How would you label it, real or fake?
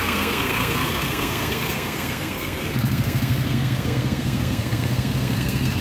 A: fake